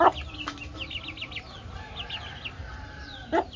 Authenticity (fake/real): real